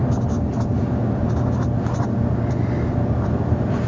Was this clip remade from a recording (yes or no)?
no